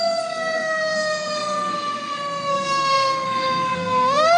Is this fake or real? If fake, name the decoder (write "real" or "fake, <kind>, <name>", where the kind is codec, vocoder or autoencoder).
fake, codec, SNAC